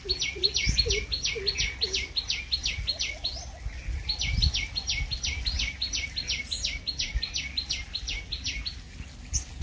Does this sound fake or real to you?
real